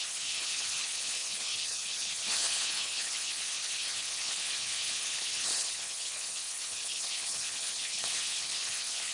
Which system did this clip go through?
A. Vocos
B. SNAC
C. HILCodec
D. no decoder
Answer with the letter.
C